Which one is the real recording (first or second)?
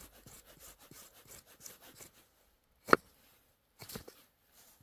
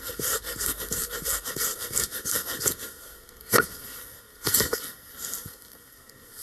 first